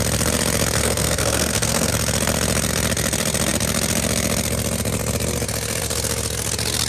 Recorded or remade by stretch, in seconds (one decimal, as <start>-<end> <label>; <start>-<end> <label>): 0.0-0.8 recorded; 0.8-1.9 remade; 1.9-6.9 recorded